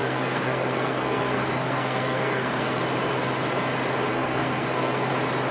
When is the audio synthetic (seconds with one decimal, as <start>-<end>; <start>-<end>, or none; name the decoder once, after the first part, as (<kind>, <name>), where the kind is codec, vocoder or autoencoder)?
0.0-2.8 (codec, SNAC); 4.1-5.1